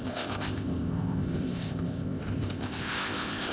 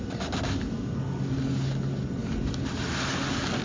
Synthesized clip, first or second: first